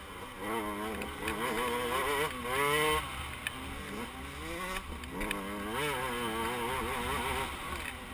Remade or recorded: recorded